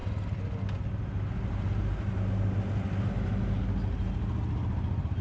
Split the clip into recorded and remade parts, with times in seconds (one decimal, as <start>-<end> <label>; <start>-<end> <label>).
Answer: 0.0-5.2 recorded

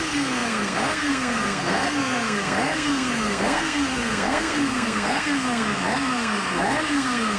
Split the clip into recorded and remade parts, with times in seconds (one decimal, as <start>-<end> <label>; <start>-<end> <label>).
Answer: 0.0-7.4 remade

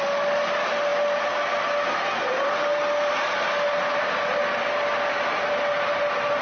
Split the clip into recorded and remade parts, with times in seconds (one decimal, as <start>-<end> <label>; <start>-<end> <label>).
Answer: 0.0-6.4 recorded

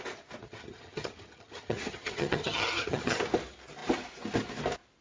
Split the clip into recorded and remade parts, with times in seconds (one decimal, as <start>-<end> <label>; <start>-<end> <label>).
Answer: 0.0-0.4 recorded; 0.4-3.2 remade; 3.2-5.0 recorded

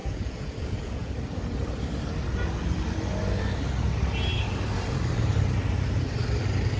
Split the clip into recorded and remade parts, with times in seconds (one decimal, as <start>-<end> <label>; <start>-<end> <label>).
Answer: 0.0-1.1 remade; 1.1-6.8 recorded